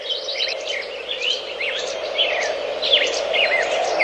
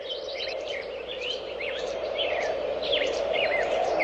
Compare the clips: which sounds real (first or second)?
first